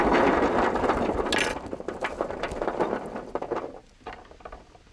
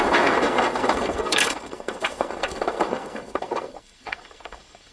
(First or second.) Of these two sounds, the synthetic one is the second